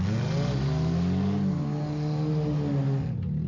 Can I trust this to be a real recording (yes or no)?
yes